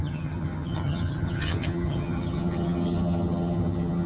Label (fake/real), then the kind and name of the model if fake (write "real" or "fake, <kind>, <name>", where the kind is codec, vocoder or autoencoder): fake, vocoder, HiFi-GAN